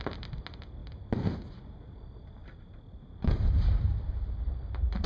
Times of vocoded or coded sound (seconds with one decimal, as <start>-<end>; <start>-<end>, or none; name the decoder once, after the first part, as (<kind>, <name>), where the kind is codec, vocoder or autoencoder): none